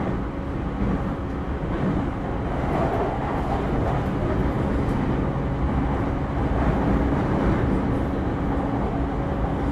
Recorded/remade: recorded